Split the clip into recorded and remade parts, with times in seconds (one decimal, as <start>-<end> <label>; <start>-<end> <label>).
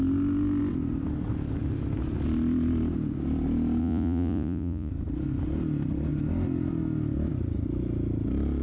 0.0-3.8 recorded; 3.8-4.9 remade; 4.9-8.6 recorded